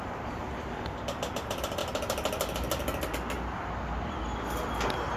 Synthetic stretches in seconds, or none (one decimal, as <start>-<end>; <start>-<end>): 0.0-0.4; 1.3-1.8